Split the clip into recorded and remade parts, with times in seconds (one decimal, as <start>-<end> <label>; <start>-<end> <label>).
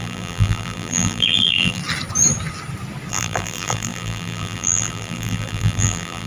0.0-1.8 remade; 1.8-3.1 recorded; 3.1-6.3 remade